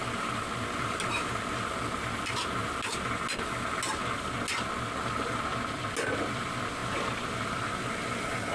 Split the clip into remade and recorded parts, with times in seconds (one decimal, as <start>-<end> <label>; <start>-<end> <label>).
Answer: 0.0-8.5 recorded